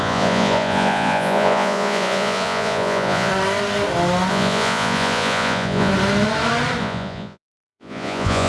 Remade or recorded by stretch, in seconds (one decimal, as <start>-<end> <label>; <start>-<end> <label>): 0.0-3.3 remade; 3.3-4.3 recorded; 4.3-5.9 remade; 5.9-6.8 recorded; 6.8-8.5 remade